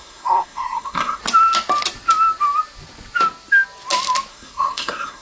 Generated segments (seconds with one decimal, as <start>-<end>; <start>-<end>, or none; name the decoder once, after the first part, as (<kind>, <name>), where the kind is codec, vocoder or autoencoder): 0.0-1.2 (codec, SNAC); 4.3-5.2